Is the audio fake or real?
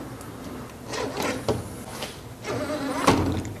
real